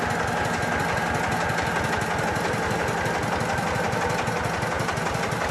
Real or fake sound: real